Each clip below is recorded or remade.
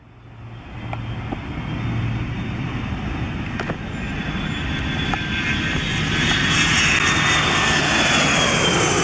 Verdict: recorded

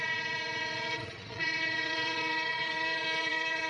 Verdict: remade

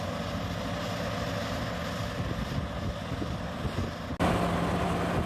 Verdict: recorded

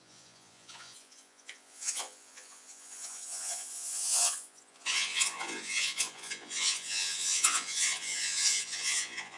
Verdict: remade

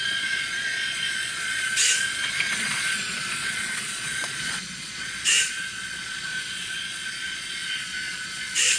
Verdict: remade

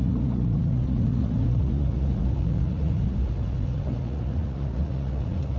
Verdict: remade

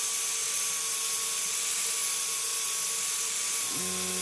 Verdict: recorded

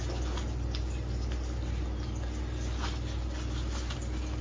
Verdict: recorded